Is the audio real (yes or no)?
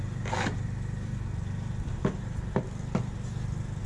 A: yes